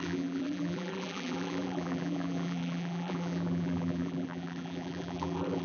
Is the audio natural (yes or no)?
no